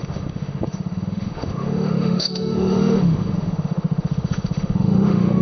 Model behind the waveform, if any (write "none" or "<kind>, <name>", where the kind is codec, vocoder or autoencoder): autoencoder, DAC-VAE